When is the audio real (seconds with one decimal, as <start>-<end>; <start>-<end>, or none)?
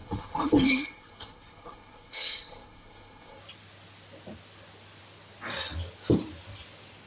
3.4-7.1